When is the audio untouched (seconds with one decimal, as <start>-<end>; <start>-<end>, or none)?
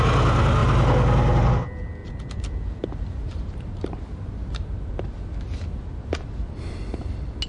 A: 0.0-2.0; 5.0-7.5